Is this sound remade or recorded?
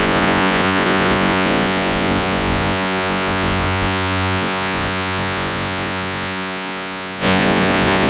remade